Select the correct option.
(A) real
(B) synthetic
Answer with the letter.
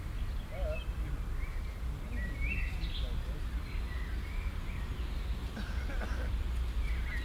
A